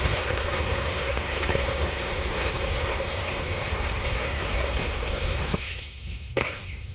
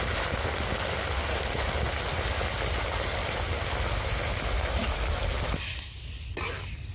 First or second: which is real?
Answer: second